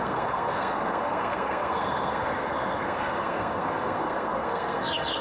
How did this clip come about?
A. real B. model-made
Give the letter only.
B